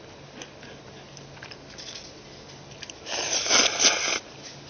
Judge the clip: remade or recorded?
recorded